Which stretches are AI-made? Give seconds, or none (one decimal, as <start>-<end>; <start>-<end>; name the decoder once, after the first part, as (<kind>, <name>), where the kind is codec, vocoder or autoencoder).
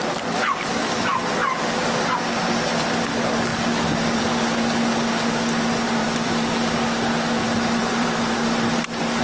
3.5-4.2 (vocoder, BigVGAN v2); 6.0-6.5; 7.8-9.2